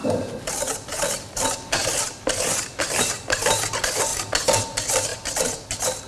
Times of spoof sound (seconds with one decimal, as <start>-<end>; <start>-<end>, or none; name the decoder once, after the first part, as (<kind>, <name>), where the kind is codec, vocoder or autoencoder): none